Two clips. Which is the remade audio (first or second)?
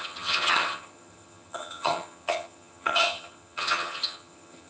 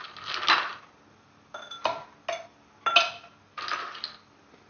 first